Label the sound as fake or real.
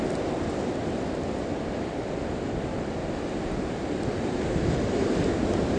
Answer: real